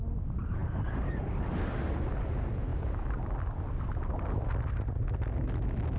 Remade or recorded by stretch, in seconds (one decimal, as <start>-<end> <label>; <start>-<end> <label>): 0.0-6.0 recorded